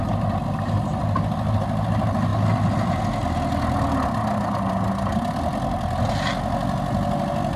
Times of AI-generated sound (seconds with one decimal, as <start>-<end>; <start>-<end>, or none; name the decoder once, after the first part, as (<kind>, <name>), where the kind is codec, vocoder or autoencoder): none